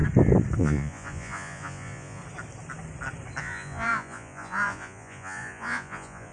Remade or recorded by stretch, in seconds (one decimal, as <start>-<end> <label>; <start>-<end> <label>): 0.0-0.6 recorded; 0.6-2.2 remade; 2.2-3.4 recorded; 3.4-6.3 remade